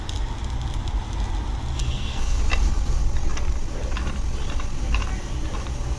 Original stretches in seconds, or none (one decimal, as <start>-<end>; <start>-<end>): 0.0-1.8; 2.4-6.0